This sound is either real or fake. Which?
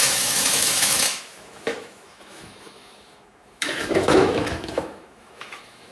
fake